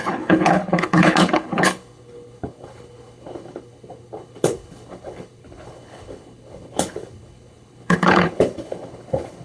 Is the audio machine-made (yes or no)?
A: yes